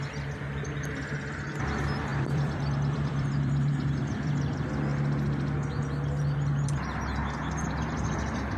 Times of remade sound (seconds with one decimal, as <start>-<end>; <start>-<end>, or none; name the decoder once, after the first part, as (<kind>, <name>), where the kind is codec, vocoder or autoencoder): 2.1-4.3 (vocoder, BigVGAN v2)